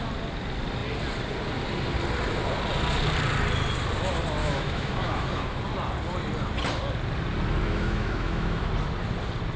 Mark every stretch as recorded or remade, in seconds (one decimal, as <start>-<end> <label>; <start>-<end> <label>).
0.0-4.4 recorded; 4.4-5.6 remade; 5.6-7.6 recorded; 7.6-8.7 remade; 8.7-9.6 recorded